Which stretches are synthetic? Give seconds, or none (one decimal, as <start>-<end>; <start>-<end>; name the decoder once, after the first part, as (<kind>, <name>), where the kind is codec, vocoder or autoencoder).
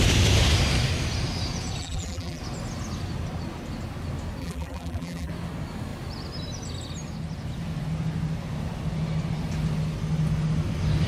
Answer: 1.8-2.4 (vocoder, BigVGAN v2); 4.4-5.3